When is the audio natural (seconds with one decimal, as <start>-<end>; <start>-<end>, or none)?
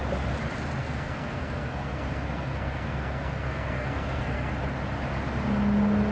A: 0.0-0.8; 4.5-6.1